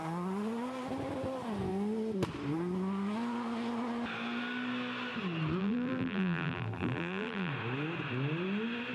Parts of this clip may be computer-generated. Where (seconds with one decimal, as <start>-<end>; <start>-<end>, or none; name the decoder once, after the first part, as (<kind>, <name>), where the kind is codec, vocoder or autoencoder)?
5.6-7.5 (vocoder, BigVGAN v2)